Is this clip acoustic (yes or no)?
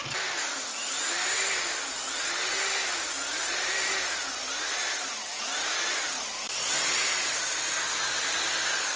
yes